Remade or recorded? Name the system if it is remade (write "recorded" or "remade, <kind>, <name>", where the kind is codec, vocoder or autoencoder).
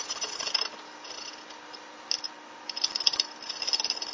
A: recorded